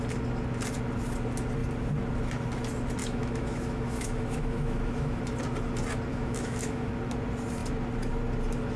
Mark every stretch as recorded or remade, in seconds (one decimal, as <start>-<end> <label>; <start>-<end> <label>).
0.0-3.0 recorded; 3.0-5.2 remade; 5.2-6.1 recorded; 6.1-6.9 remade; 6.9-8.8 recorded